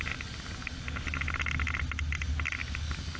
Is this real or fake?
real